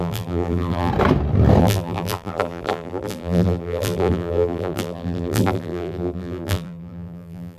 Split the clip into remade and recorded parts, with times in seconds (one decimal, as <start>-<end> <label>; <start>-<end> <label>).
0.0-0.9 remade; 0.9-1.6 recorded; 1.6-7.6 remade